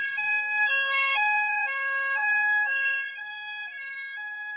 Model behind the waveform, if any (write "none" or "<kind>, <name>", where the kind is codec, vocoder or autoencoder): codec, SNAC